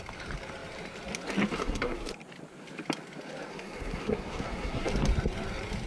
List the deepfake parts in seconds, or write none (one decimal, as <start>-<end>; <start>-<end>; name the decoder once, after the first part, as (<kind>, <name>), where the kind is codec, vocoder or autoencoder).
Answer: 1.6-2.1 (codec, SNAC); 3.5-4.9